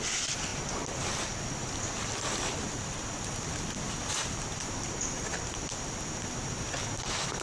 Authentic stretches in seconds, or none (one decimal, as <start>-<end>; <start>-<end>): 0.0-7.4